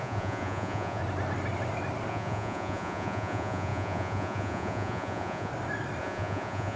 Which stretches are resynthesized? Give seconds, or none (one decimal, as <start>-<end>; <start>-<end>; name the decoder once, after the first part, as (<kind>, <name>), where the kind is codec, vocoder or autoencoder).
0.0-1.0 (vocoder, Vocos); 2.1-5.5; 6.0-6.8